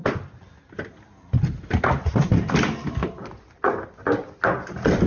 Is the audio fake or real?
real